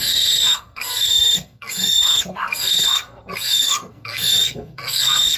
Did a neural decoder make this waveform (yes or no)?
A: yes